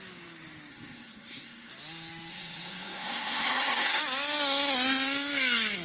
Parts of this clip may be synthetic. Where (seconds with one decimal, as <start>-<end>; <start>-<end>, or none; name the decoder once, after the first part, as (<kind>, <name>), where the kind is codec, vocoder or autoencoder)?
0.7-1.7 (codec, SNAC); 2.3-4.0